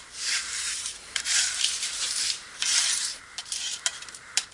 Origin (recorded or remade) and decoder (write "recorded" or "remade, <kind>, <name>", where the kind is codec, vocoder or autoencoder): remade, vocoder, BigVGAN v2